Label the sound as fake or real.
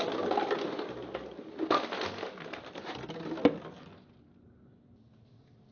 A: real